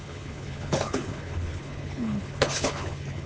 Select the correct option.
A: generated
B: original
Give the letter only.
A